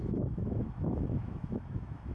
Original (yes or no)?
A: no